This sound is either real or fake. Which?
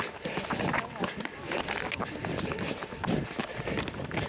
real